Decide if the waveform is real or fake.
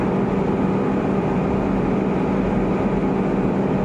real